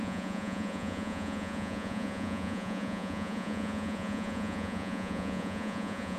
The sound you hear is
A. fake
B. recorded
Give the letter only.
A